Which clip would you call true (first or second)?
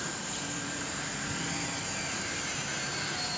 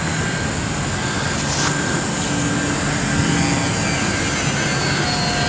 second